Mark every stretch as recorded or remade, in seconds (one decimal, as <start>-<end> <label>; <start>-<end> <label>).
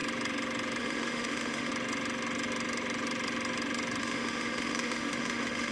0.0-0.8 recorded; 0.8-1.7 remade; 1.7-4.0 recorded; 4.0-5.7 remade